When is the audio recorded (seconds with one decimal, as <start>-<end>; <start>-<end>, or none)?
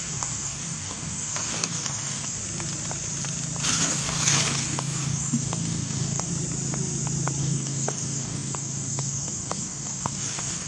2.4-3.7; 6.3-7.4